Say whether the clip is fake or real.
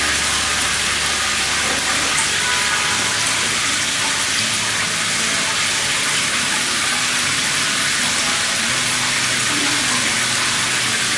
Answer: real